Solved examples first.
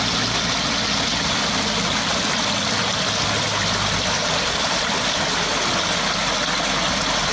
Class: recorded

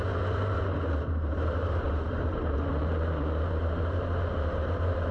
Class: remade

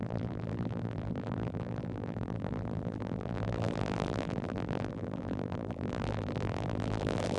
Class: remade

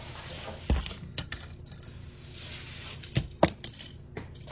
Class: recorded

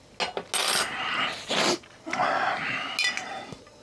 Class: recorded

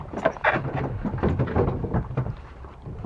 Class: remade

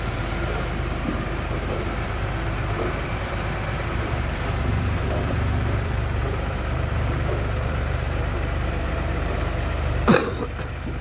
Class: remade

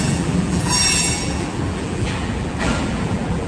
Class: remade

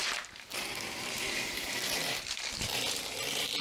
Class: remade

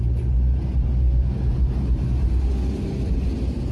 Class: recorded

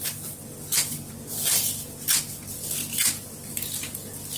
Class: recorded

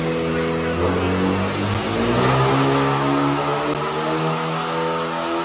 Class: recorded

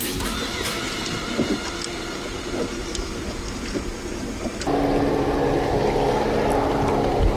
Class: recorded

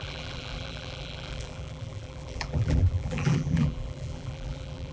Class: remade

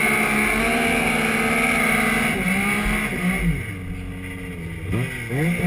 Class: recorded